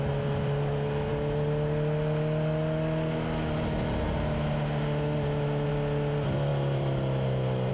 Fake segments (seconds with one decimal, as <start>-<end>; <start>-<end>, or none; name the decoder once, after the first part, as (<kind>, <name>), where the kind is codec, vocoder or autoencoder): none